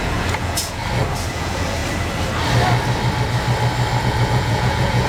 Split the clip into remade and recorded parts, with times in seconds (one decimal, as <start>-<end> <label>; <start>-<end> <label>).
0.0-0.8 remade; 0.8-1.3 recorded; 1.3-1.8 remade; 1.8-4.0 recorded; 4.0-5.1 remade